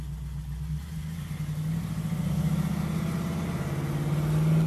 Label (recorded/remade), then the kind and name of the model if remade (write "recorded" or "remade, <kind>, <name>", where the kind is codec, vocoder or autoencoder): recorded